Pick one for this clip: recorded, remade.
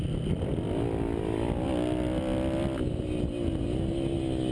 recorded